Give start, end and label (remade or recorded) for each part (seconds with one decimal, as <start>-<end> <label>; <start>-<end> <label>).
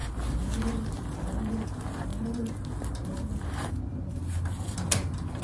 0.0-5.4 recorded